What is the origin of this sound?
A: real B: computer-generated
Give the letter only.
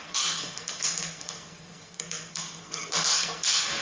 B